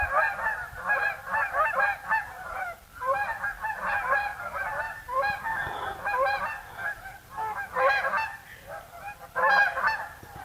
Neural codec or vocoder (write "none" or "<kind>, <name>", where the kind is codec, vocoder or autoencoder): vocoder, BigVGAN v2